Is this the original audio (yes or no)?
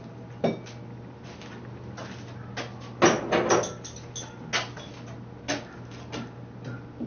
yes